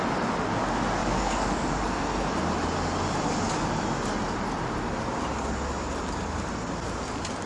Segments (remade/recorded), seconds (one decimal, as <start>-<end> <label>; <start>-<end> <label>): 0.0-1.0 recorded; 1.0-1.8 remade; 1.8-7.5 recorded

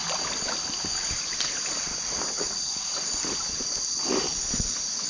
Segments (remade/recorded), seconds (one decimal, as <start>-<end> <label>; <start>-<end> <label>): 0.0-5.1 recorded

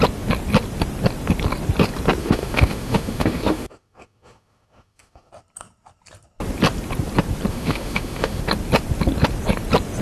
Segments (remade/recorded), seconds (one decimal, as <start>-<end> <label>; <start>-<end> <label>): 0.0-2.2 recorded; 2.2-5.3 remade; 5.3-7.5 recorded; 7.5-8.4 remade; 8.4-10.0 recorded

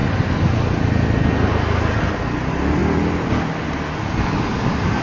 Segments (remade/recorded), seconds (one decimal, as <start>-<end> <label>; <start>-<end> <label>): 0.0-5.0 recorded

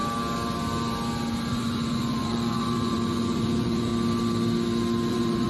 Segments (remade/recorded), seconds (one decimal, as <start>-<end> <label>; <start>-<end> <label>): 0.0-1.5 recorded; 1.5-3.9 remade; 3.9-5.1 recorded; 5.1-5.5 remade

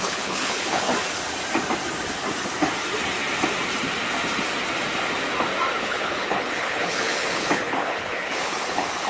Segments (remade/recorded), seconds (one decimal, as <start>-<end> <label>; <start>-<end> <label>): 0.0-0.9 remade; 0.9-5.8 recorded; 5.8-9.1 remade

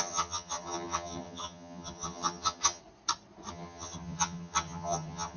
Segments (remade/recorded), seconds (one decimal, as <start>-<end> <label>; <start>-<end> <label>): 0.0-2.8 remade; 2.8-3.5 recorded; 3.5-5.4 remade